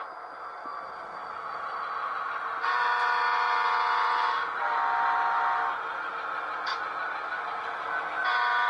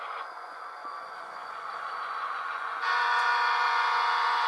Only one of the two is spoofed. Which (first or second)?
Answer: second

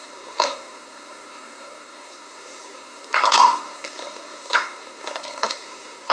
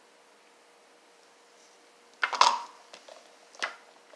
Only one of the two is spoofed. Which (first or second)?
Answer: first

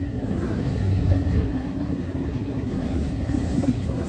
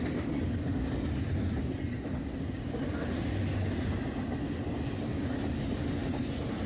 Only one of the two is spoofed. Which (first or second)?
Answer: first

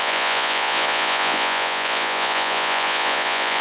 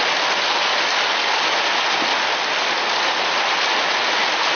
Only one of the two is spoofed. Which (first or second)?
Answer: first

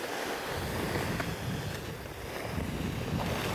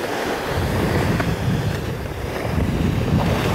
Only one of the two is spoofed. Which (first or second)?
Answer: second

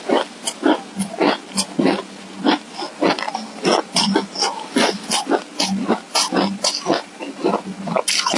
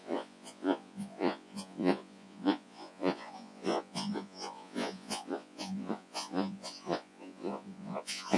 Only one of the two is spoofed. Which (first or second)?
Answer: second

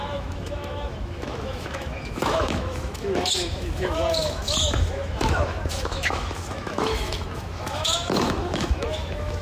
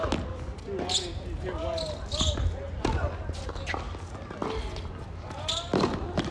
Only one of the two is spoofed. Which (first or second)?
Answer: first